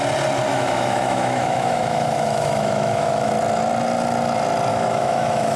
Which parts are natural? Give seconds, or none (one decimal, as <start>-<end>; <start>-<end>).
0.0-0.5; 3.3-4.7